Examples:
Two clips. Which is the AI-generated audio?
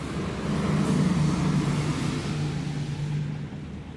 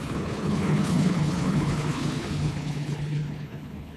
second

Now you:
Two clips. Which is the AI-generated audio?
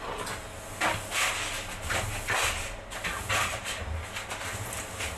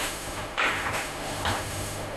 second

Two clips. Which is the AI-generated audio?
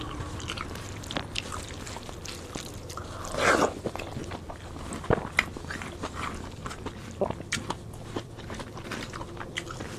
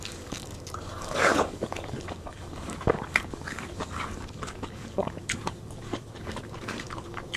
second